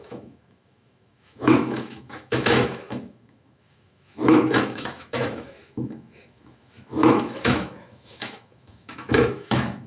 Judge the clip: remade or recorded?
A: remade